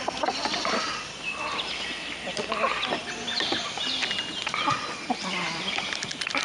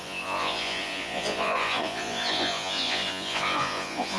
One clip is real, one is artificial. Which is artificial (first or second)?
second